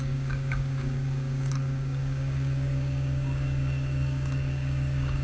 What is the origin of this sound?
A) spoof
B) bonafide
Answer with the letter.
A